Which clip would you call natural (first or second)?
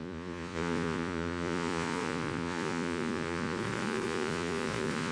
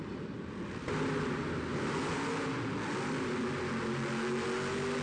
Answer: second